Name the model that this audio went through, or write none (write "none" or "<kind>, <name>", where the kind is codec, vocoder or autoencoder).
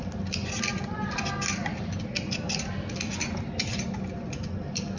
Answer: none